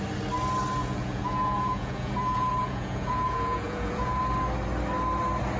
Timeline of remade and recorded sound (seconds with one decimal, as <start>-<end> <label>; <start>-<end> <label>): 0.0-0.8 recorded; 0.8-4.2 remade; 4.2-5.6 recorded